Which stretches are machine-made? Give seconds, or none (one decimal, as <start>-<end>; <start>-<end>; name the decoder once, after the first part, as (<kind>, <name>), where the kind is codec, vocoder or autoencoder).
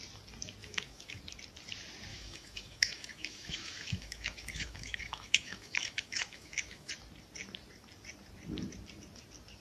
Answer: 0.6-1.2 (autoencoder, DAC-VAE); 2.1-6.9